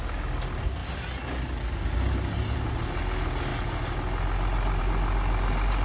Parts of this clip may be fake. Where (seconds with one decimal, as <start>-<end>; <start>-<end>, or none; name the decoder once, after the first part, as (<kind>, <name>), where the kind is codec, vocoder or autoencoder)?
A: none